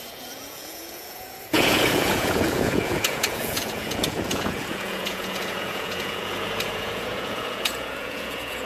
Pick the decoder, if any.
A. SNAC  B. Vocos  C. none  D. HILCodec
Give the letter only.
B